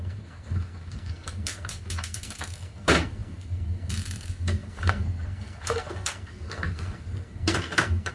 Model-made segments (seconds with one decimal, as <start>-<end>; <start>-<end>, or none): 0.0-8.1